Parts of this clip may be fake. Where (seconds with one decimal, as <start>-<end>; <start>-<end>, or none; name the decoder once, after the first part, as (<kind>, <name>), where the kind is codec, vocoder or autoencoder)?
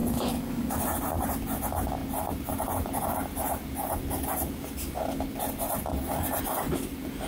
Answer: 0.0-0.7 (codec, DAC)